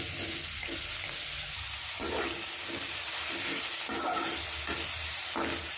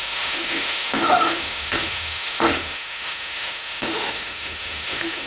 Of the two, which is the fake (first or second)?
second